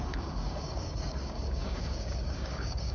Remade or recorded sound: remade